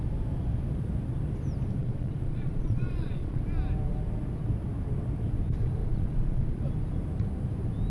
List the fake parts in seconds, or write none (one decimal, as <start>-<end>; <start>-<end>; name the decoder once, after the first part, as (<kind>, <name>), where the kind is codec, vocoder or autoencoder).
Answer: 1.8-3.4 (vocoder, Vocos); 5.8-6.6